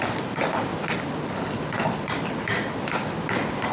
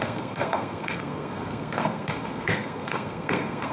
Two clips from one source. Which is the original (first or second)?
first